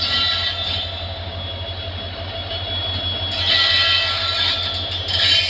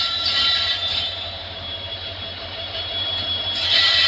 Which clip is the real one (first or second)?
first